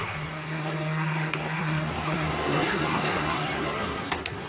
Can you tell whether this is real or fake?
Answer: fake